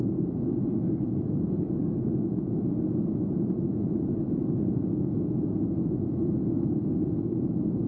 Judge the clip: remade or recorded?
remade